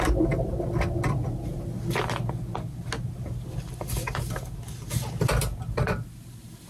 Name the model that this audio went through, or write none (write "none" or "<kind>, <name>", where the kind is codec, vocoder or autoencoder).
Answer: none